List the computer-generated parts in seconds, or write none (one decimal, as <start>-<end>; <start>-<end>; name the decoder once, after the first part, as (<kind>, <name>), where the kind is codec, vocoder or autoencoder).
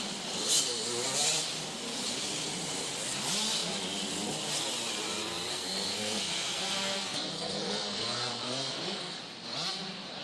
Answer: 5.5-9.2 (codec, SNAC)